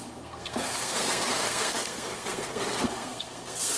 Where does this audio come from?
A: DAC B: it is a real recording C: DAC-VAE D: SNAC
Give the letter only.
D